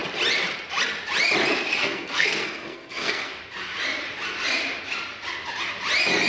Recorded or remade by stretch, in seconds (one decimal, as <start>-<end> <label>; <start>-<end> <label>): 0.0-1.8 recorded; 1.8-3.4 remade; 3.4-6.3 recorded